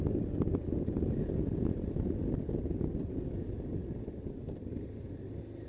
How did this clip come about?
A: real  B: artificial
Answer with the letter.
A